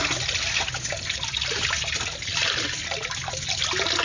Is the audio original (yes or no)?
yes